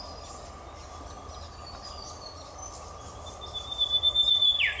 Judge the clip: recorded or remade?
recorded